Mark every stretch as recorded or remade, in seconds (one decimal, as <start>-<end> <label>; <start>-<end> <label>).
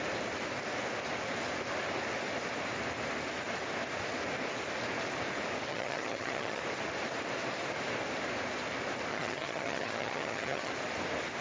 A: 0.0-5.7 recorded; 5.7-6.6 remade; 6.6-9.1 recorded; 9.1-10.7 remade; 10.7-11.4 recorded